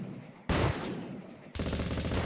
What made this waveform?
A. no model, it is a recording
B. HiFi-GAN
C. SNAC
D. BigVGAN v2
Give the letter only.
D